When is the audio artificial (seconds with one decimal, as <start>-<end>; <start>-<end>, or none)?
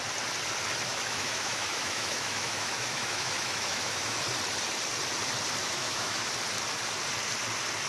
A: 0.9-4.2; 5.6-6.3